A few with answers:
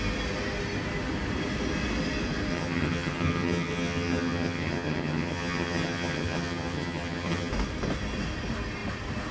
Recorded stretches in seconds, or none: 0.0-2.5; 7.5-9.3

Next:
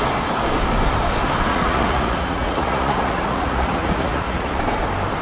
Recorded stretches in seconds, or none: 0.0-1.5; 4.6-5.2